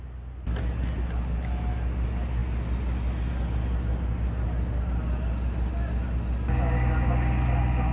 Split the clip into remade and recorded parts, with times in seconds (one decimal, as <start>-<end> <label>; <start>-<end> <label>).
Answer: 0.0-7.9 recorded